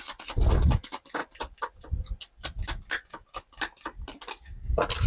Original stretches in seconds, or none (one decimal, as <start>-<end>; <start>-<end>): 0.0-5.1